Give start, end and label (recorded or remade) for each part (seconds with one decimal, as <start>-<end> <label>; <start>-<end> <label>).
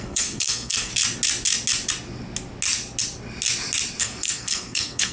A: 0.0-0.9 remade; 0.9-4.0 recorded; 4.0-5.1 remade